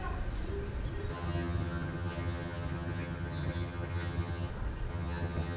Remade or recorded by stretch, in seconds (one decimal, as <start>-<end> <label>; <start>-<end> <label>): 0.0-1.1 recorded; 1.1-4.5 remade; 4.5-4.9 recorded; 4.9-5.6 remade